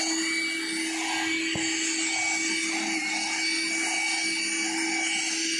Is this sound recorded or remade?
recorded